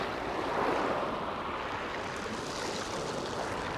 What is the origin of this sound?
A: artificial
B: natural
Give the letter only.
B